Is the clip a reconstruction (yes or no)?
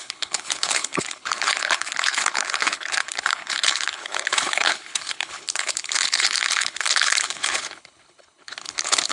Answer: yes